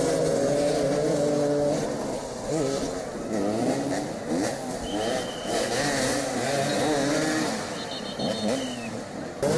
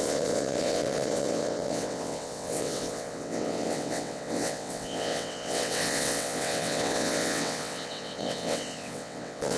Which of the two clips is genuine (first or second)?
first